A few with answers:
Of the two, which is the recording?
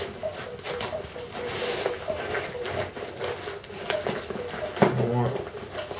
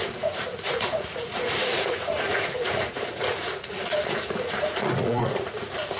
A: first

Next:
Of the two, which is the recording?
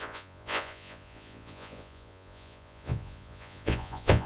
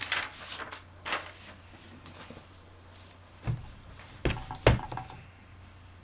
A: second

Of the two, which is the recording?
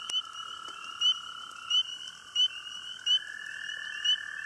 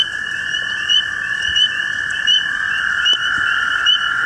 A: first